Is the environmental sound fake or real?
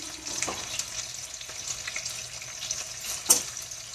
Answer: real